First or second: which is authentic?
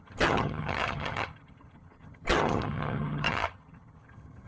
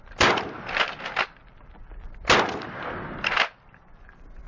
second